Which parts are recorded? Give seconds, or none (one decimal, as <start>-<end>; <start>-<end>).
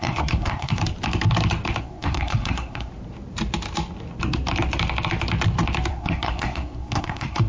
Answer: 0.8-1.8; 2.9-5.9